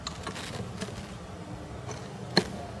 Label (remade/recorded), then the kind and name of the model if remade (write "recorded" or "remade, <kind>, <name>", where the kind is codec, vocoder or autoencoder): recorded